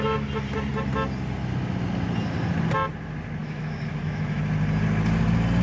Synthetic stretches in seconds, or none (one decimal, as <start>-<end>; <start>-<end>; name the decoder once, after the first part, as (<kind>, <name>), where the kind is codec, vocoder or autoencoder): 3.4-4.4 (autoencoder, DAC-VAE)